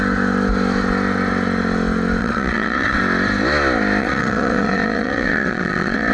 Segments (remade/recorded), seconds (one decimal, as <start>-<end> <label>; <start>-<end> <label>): 0.0-2.2 recorded; 2.2-3.0 remade; 3.0-4.0 recorded; 4.0-6.1 remade